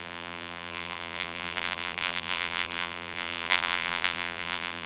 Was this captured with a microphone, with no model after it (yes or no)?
no